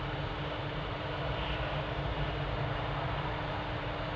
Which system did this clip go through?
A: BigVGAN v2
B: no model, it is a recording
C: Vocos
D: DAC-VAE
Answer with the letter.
A